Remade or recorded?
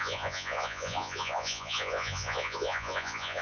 remade